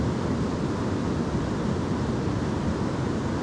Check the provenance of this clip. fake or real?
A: real